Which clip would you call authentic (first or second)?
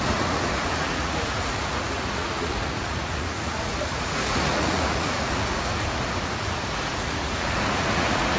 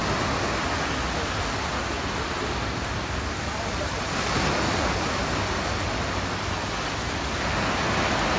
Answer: second